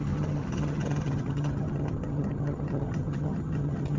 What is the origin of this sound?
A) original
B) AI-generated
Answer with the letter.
B